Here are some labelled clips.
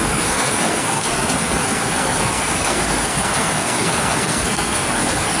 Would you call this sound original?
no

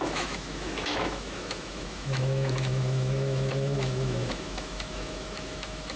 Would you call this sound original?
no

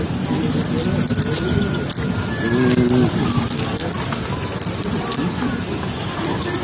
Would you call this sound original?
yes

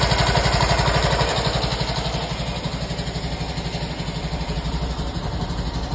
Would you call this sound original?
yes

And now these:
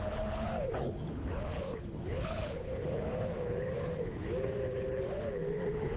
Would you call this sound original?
no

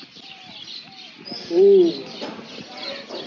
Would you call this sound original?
yes